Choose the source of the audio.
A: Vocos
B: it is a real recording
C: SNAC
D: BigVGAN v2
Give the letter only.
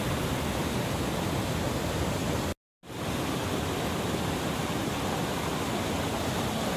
B